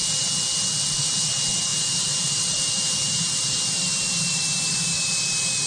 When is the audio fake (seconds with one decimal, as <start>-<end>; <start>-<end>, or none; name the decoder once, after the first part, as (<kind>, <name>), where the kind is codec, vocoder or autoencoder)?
1.7-5.1 (vocoder, BigVGAN v2)

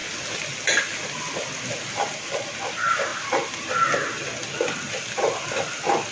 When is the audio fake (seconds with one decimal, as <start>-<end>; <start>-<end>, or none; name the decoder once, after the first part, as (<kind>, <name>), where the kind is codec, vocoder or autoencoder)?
none